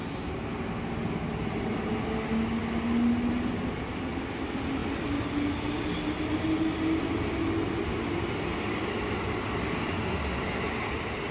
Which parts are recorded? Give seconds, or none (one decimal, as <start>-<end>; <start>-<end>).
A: 0.0-11.3